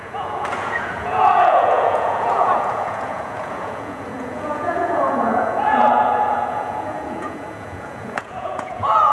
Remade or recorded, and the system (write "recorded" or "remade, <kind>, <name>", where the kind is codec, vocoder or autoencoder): remade, vocoder, Vocos